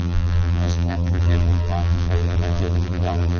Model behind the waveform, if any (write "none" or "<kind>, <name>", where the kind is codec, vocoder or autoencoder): vocoder, BigVGAN v2